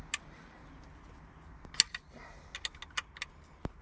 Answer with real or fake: real